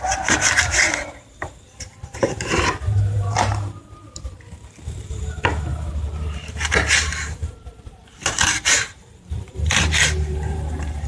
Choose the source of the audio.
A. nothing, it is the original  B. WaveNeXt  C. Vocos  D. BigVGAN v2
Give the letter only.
D